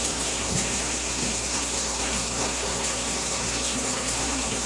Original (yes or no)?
no